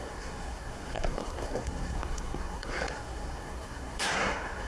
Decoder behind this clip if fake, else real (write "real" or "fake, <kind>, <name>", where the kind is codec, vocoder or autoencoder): fake, codec, SNAC